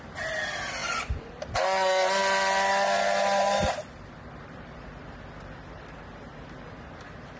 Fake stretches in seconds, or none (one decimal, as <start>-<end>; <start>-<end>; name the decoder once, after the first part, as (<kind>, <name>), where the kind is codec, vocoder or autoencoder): 0.8-1.3 (vocoder, Vocos)